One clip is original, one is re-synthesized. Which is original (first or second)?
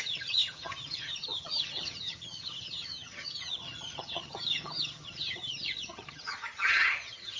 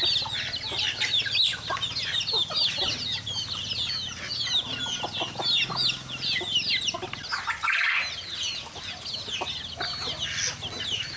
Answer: second